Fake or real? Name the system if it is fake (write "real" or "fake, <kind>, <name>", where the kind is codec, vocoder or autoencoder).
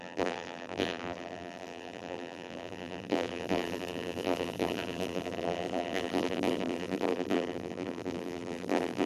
fake, vocoder, BigVGAN v2